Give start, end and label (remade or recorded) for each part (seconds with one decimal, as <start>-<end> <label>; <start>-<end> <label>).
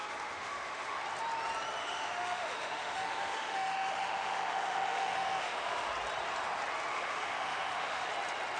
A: 0.0-1.0 remade; 1.0-1.8 recorded; 1.8-5.9 remade; 5.9-6.9 recorded; 6.9-8.1 remade; 8.1-8.6 recorded